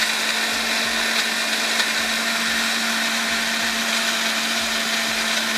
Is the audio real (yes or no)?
yes